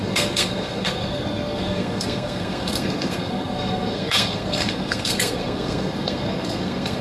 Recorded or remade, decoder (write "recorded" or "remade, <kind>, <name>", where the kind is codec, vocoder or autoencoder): remade, codec, SNAC